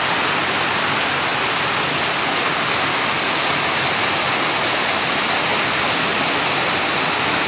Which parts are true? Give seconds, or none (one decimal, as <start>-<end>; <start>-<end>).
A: 0.0-7.5